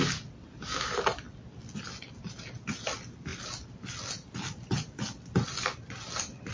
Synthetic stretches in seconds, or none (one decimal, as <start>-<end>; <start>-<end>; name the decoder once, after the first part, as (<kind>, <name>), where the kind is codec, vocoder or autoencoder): none